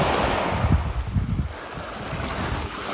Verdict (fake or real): real